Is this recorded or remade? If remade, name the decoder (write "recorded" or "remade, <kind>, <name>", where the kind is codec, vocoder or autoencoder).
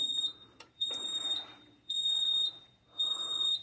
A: remade, vocoder, BigVGAN v2